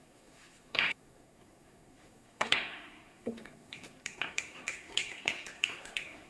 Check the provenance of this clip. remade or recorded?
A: remade